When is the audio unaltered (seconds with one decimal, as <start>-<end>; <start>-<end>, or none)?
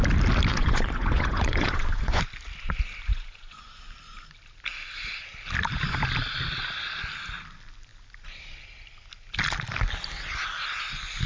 0.0-0.5; 2.2-3.1; 3.8-11.3